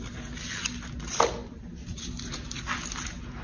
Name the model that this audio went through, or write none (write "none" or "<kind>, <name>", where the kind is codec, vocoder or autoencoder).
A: none